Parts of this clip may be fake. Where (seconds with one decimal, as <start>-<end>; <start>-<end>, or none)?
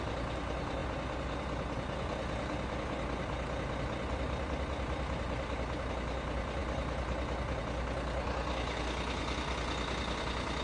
none